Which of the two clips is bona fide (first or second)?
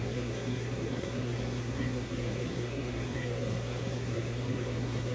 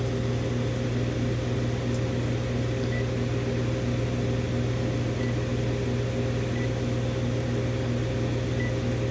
second